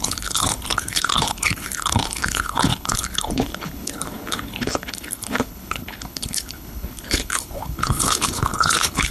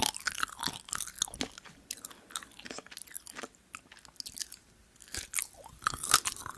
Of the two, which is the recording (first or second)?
second